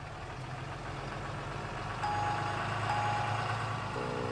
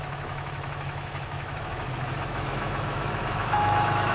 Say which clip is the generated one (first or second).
second